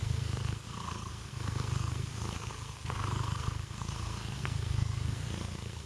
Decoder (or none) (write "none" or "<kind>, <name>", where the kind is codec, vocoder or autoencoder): codec, SNAC